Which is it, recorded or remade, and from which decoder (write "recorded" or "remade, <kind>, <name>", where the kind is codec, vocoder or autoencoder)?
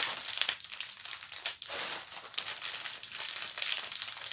recorded